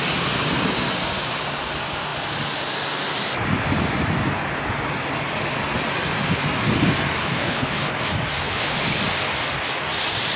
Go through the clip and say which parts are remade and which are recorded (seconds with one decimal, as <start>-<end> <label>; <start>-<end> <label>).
0.0-7.2 recorded; 7.2-7.9 remade; 7.9-8.4 recorded; 8.4-9.0 remade; 9.0-10.4 recorded